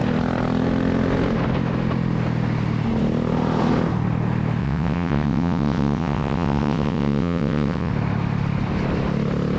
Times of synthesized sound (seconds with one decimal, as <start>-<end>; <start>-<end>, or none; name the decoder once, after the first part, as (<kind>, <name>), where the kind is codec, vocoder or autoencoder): 4.6-7.9 (vocoder, WaveNeXt)